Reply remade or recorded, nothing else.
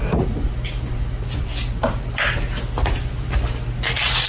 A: recorded